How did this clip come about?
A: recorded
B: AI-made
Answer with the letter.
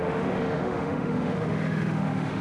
B